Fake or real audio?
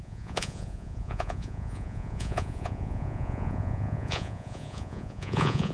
fake